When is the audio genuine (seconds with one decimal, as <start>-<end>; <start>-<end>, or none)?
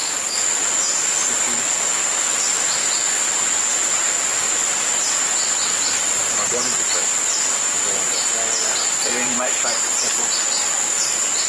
0.0-11.5